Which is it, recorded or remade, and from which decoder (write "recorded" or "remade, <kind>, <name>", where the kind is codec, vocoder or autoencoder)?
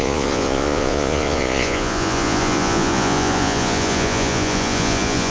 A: remade, vocoder, Vocos